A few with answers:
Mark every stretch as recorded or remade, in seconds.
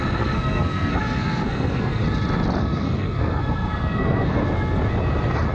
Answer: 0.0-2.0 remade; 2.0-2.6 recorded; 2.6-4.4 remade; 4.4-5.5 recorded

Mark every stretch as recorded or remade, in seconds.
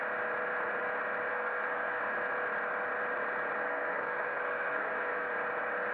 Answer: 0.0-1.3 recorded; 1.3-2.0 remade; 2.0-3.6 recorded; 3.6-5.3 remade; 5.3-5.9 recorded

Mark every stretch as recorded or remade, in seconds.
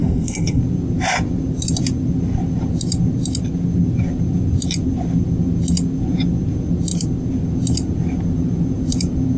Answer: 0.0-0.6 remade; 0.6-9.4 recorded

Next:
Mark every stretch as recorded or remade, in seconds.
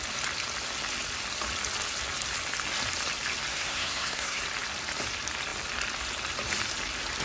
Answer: 0.0-3.5 recorded; 3.5-4.4 remade; 4.4-7.2 recorded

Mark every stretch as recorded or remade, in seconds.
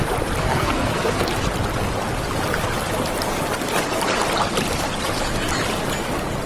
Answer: 0.0-0.4 recorded; 0.4-1.3 remade; 1.3-6.5 recorded